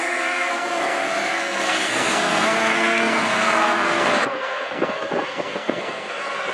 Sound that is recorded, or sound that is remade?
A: remade